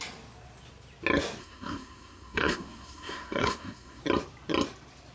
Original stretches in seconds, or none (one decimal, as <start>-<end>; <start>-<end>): 0.0-1.4; 4.0-5.1